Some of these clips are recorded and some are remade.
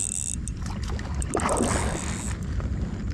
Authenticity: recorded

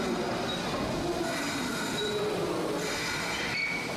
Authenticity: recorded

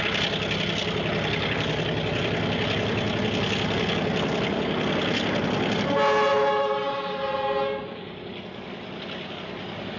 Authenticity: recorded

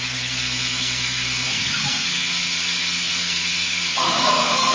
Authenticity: remade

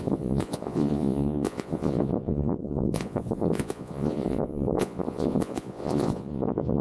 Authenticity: remade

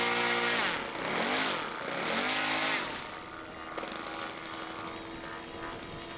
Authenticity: recorded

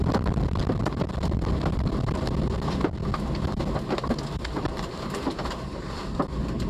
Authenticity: recorded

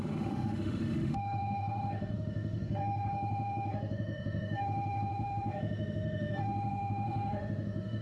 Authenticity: remade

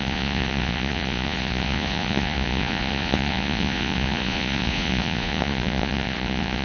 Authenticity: remade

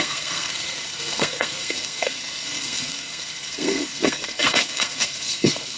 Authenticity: remade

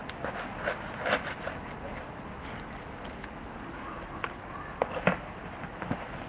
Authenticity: recorded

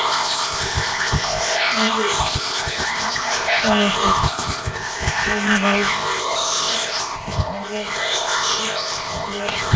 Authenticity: remade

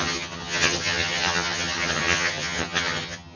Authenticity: remade